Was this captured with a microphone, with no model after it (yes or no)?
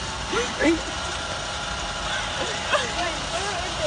yes